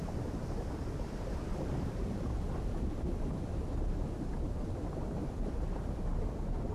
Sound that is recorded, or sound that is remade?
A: recorded